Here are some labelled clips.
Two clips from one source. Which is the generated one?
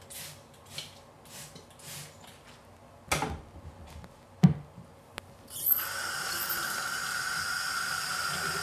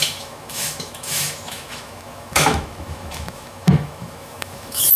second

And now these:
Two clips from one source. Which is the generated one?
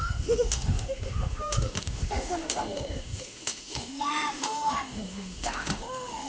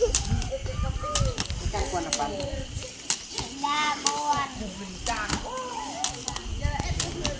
first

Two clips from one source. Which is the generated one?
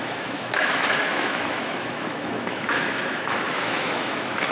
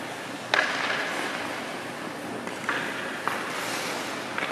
first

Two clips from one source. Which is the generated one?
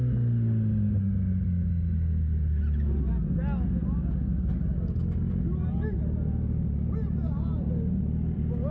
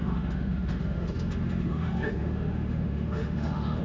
second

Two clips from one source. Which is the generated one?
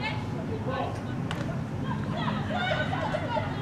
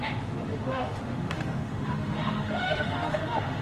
second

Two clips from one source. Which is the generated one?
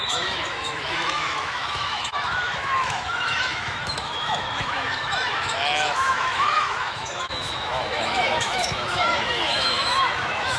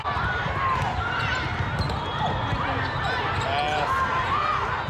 first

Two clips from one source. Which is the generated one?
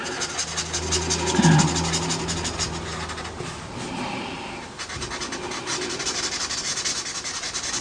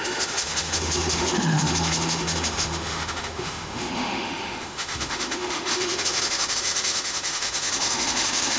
second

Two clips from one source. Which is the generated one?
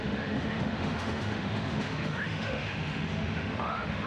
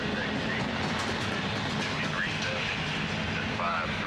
first